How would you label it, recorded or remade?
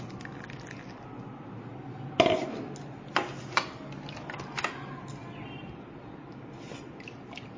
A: recorded